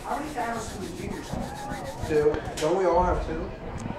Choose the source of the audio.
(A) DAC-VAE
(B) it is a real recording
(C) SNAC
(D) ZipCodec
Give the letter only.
A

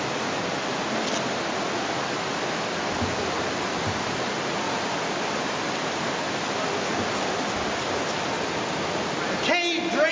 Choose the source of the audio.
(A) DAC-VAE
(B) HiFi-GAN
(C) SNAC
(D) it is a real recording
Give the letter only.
D